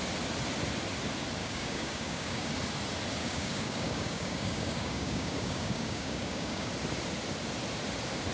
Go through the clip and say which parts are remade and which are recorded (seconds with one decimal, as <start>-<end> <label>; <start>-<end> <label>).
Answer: 0.0-1.4 recorded; 1.4-2.5 remade; 2.5-3.2 recorded; 3.2-6.7 remade; 6.7-8.3 recorded